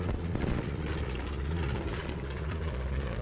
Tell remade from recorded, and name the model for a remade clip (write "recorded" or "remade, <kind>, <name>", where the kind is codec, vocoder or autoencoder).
remade, vocoder, Vocos